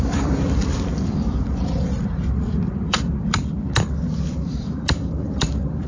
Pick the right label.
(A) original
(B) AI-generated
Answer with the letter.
B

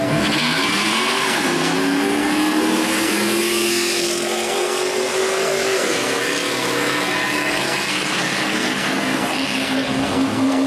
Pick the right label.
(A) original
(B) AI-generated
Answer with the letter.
B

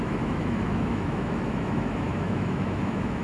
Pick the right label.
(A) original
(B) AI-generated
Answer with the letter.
B